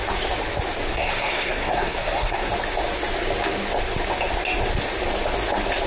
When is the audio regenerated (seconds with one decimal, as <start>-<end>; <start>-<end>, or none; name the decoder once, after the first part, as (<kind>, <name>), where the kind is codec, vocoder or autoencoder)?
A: 0.9-2.5 (codec, SNAC)